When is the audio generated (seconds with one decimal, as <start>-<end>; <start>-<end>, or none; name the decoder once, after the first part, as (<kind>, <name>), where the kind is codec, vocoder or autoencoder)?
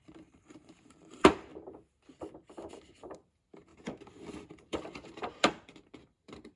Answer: 0.0-1.5 (vocoder, BigVGAN v2); 2.7-3.7; 4.5-6.6